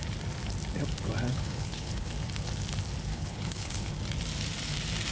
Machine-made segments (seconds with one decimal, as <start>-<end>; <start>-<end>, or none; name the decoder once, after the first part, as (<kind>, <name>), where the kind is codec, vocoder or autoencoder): 1.3-2.1 (codec, HILCodec); 3.1-3.9